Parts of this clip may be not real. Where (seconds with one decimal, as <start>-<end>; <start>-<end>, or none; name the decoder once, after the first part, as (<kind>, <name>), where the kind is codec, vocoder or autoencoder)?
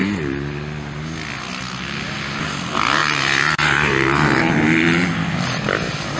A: none